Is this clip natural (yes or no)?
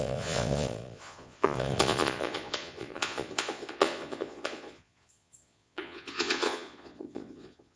no